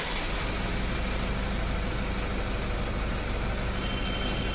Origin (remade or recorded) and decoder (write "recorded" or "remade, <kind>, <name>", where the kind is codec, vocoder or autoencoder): recorded